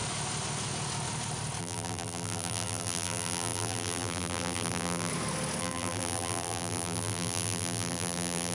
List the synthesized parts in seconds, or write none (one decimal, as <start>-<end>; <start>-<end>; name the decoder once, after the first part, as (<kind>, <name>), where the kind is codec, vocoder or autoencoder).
1.6-5.1 (vocoder, BigVGAN v2); 5.6-8.5